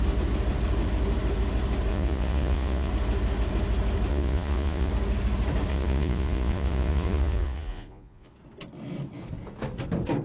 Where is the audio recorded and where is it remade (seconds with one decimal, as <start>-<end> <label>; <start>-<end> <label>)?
0.0-1.9 recorded; 1.9-2.9 remade; 2.9-4.1 recorded; 4.1-4.9 remade; 4.9-5.7 recorded; 5.7-8.3 remade; 8.3-10.2 recorded